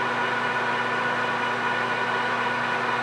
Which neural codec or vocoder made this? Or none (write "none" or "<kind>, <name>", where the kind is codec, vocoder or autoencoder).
none